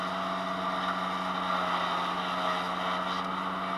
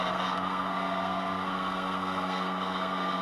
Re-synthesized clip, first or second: second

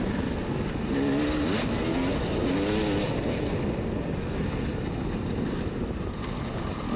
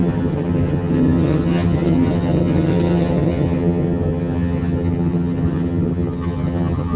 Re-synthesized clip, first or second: second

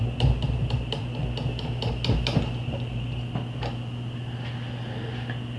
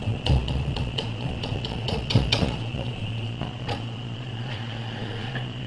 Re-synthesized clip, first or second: second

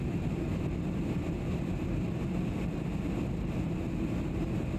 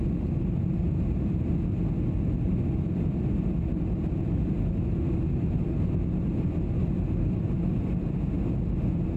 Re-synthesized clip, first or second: first